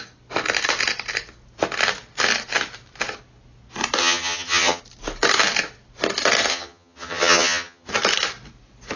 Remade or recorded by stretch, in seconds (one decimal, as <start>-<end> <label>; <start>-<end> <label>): 0.0-4.0 recorded; 4.0-4.8 remade; 4.8-6.5 recorded; 6.5-7.9 remade; 7.9-9.0 recorded